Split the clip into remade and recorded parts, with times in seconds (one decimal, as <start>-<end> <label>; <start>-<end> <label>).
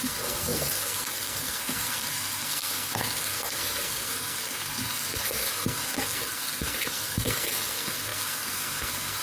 0.0-9.2 remade